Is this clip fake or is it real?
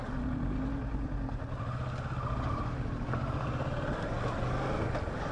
real